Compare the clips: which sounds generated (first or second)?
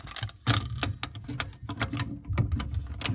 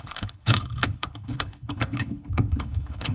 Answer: second